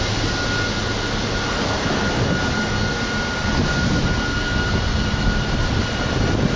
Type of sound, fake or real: real